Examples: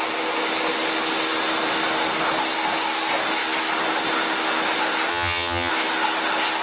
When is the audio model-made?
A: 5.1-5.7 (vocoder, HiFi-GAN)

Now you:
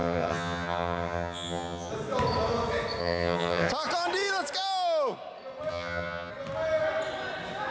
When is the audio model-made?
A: 0.0-1.9 (vocoder, HiFi-GAN); 3.0-3.7; 5.7-6.3

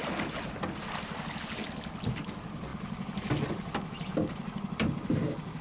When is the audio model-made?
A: none